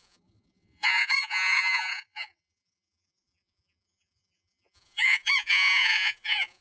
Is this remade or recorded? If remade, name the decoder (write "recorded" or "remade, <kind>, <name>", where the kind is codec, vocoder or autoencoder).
remade, vocoder, Vocos